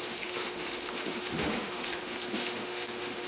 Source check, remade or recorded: remade